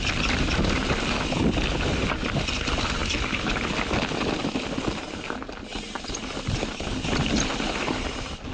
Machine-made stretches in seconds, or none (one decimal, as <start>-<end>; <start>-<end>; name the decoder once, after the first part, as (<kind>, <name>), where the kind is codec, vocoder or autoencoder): none